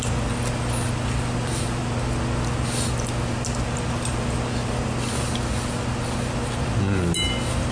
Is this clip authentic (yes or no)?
yes